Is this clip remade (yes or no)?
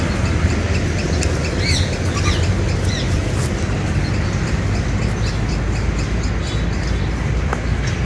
no